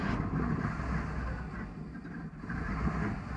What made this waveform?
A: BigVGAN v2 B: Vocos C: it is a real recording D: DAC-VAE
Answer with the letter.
C